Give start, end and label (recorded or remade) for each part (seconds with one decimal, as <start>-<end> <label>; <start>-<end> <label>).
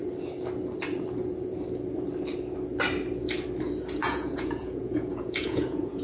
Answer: 0.0-4.0 recorded; 4.0-6.0 remade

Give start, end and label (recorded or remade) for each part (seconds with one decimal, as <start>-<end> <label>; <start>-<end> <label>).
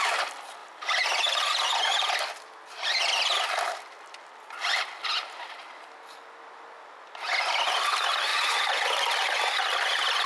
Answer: 0.0-8.3 recorded; 8.3-8.9 remade; 8.9-10.3 recorded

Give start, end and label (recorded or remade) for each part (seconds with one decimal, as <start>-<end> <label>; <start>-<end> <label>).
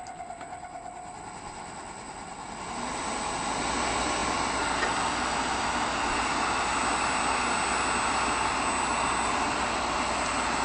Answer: 0.0-10.6 recorded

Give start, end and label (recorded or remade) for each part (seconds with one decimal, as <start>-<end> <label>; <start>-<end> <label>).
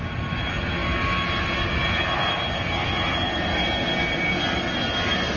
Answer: 0.0-5.4 recorded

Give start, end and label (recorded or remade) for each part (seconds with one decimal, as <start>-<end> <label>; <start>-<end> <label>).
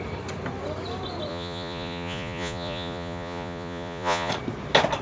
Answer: 0.0-1.3 recorded; 1.3-4.3 remade; 4.3-5.0 recorded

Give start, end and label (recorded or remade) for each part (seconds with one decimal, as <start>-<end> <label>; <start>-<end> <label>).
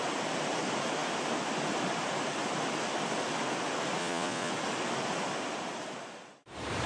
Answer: 0.0-4.0 recorded; 4.0-4.5 remade; 4.5-6.9 recorded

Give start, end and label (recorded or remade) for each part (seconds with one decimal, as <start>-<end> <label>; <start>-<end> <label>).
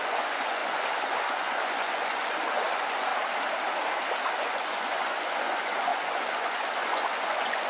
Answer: 0.0-3.1 remade; 3.1-4.4 recorded; 4.4-7.7 remade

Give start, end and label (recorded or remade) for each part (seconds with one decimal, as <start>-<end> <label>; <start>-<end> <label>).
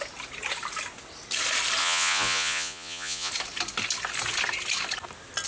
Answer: 0.0-1.8 recorded; 1.8-3.3 remade; 3.3-5.5 recorded